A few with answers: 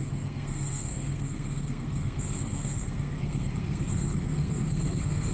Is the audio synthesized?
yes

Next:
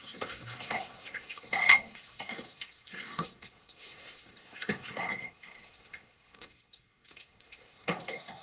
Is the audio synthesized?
yes